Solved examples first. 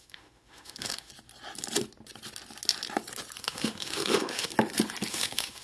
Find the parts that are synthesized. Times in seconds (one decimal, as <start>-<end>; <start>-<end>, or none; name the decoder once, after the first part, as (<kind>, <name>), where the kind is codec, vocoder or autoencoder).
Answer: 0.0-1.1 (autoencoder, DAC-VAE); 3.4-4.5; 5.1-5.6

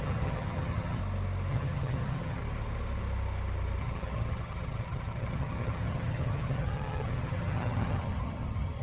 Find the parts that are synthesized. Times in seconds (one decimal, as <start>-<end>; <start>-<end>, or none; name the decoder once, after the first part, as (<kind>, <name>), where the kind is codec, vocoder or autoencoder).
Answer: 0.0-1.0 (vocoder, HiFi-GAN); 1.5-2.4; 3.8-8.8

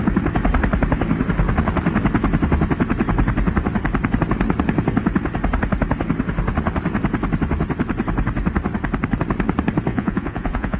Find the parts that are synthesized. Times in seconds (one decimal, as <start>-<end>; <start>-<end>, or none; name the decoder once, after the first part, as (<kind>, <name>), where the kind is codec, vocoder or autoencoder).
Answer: 9.9-10.8 (vocoder, Vocos)